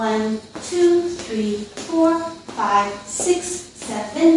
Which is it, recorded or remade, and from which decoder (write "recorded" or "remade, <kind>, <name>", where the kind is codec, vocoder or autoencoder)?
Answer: recorded